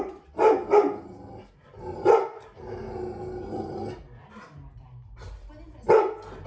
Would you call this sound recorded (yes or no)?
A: yes